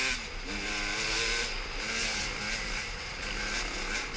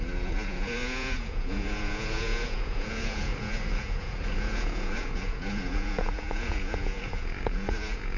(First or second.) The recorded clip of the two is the first